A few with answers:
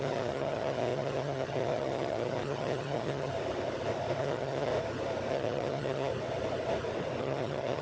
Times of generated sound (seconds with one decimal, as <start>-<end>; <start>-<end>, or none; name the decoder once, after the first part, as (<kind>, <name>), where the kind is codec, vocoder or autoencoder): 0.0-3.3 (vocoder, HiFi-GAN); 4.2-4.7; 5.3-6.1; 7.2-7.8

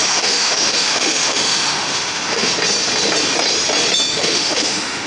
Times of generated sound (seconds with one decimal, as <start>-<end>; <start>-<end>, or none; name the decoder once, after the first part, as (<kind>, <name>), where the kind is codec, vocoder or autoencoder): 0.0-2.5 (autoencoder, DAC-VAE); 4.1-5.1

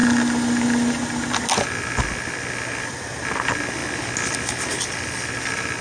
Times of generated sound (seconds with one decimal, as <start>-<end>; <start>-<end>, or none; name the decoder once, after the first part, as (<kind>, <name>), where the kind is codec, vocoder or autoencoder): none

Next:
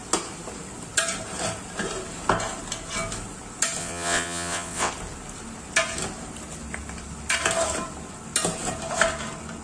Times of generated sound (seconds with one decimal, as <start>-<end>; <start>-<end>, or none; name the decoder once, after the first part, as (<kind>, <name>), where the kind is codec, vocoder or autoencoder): 3.8-4.9 (vocoder, WaveNeXt)